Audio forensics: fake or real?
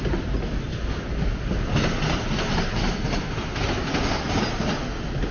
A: real